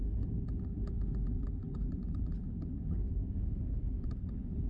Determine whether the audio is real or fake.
fake